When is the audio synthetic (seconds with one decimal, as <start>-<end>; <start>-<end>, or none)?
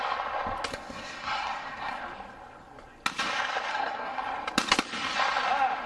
0.7-2.0; 3.7-4.2